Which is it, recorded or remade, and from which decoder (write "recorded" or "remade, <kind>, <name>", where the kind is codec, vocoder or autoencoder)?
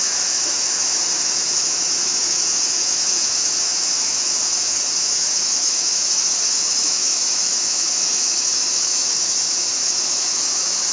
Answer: remade, autoencoder, DAC-VAE